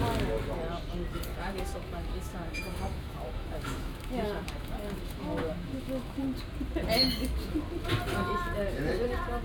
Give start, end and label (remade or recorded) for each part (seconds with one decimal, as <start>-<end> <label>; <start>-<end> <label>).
0.0-1.3 recorded; 1.3-6.2 remade; 6.2-9.4 recorded